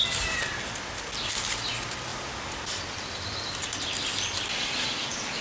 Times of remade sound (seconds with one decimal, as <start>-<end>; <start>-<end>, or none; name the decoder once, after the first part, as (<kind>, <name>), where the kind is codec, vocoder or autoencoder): none